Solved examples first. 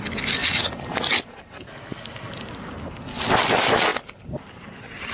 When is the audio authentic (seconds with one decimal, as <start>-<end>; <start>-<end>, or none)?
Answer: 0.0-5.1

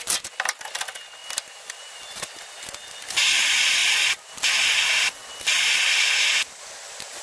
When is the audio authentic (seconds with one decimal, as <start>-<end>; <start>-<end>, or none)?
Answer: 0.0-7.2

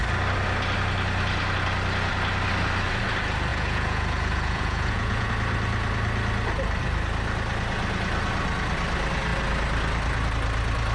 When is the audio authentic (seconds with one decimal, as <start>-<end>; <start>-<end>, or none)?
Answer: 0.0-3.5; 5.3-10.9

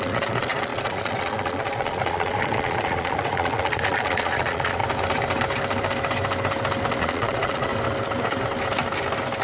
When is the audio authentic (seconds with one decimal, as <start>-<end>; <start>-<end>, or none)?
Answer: 4.8-7.0; 7.7-9.4

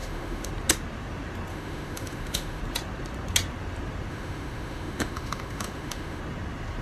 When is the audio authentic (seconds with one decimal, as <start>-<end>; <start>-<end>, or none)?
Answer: 0.5-1.5; 2.6-4.1; 6.2-6.8

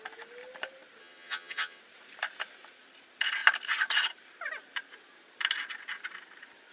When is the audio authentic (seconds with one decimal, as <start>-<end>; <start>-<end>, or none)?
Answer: 0.0-1.0; 1.8-6.7

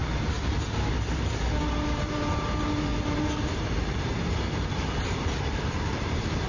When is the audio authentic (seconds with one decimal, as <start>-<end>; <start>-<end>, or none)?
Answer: 0.0-1.7